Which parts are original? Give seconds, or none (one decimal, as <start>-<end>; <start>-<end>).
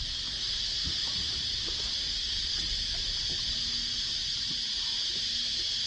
0.0-2.2; 2.8-5.9